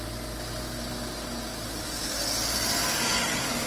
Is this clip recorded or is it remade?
recorded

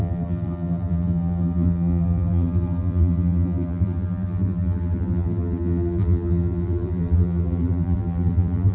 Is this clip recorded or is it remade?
remade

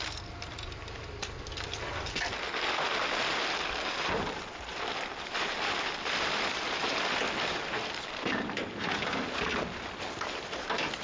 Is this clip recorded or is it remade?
remade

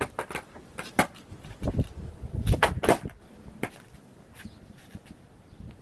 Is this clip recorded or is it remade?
remade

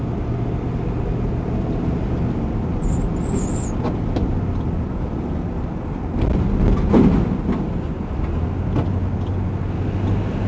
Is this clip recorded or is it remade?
recorded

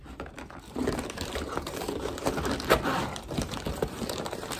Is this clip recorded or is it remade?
remade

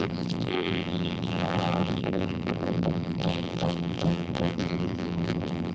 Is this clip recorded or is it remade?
remade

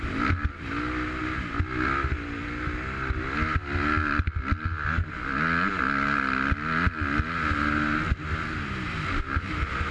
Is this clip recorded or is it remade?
recorded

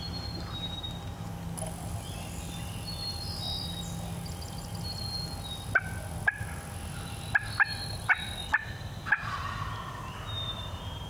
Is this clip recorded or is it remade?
recorded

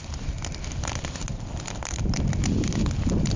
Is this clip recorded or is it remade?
recorded